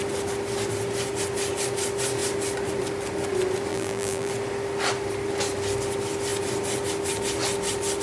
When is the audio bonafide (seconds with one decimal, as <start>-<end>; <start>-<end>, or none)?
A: 0.0-3.7; 4.3-8.0